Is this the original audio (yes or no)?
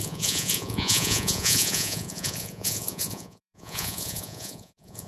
no